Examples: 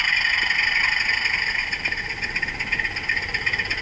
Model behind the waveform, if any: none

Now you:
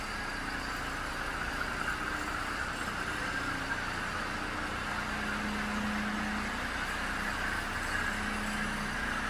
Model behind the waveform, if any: none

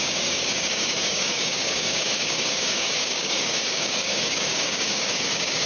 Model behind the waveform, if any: codec, DAC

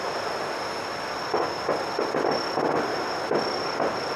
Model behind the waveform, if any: none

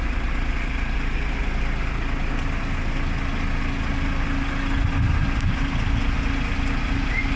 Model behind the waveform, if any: none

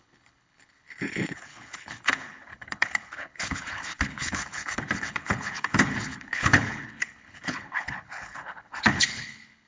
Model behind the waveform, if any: codec, HILCodec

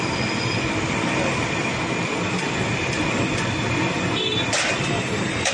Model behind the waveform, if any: vocoder, BigVGAN v2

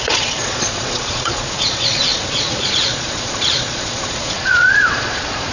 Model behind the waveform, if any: vocoder, Vocos